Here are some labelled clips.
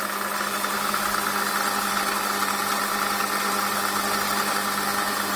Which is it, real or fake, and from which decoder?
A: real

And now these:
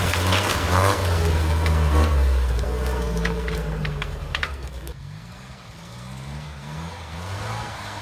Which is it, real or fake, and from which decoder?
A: fake, codec, SNAC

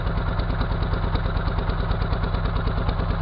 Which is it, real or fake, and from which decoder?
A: real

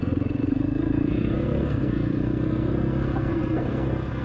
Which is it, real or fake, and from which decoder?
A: fake, codec, SNAC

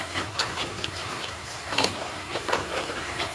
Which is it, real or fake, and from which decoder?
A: fake, codec, SNAC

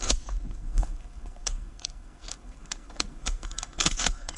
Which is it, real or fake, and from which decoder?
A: fake, codec, SNAC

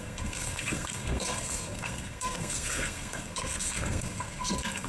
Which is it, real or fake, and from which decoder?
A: fake, codec, SNAC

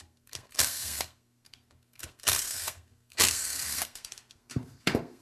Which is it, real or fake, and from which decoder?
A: fake, codec, SNAC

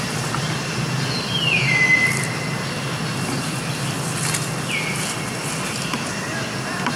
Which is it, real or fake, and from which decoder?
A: real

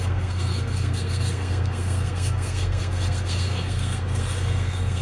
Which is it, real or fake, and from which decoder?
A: fake, codec, SNAC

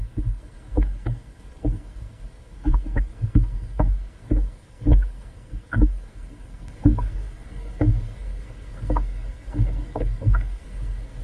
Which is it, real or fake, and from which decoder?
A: fake, codec, SNAC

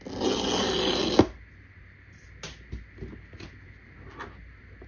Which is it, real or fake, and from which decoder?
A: real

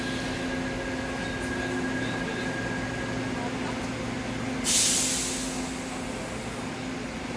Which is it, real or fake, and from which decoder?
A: real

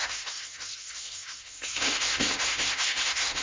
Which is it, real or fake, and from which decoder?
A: fake, codec, SNAC